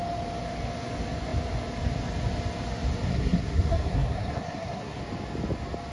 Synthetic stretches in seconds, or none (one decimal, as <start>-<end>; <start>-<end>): 3.1-5.0